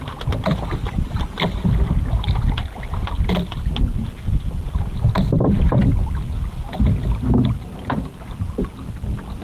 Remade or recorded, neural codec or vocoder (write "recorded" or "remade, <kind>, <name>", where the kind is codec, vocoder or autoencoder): recorded